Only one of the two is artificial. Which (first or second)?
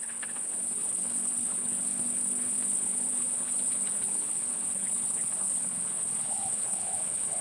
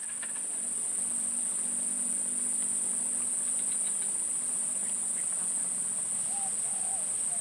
first